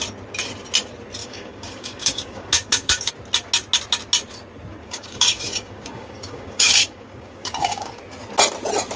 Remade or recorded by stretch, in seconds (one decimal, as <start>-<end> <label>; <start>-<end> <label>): 0.0-1.2 recorded; 1.2-3.1 remade; 3.1-4.8 recorded; 4.8-8.0 remade; 8.0-9.0 recorded